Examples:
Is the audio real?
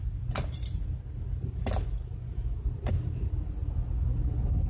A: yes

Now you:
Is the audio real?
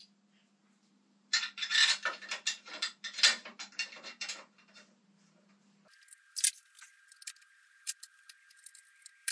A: yes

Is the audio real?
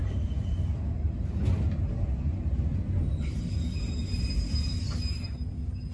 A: yes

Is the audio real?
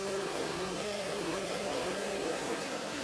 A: no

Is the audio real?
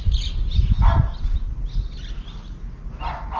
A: yes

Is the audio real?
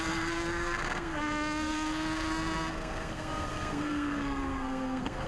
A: no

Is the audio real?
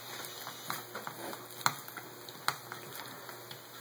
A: yes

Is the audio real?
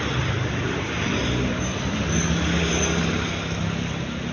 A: yes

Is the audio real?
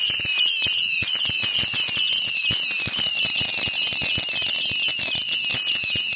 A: yes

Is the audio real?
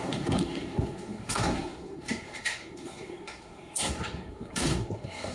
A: no